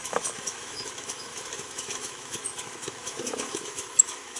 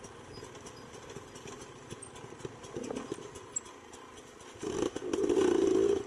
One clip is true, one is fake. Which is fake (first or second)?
first